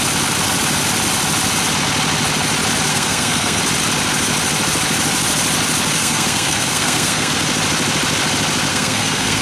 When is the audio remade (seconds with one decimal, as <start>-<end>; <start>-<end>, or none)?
2.9-3.6; 6.0-7.3; 8.7-9.4